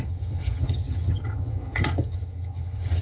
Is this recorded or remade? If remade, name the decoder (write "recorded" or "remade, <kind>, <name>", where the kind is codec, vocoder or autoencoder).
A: remade, vocoder, HiFi-GAN